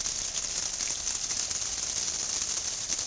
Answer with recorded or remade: recorded